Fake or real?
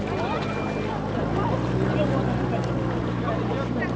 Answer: real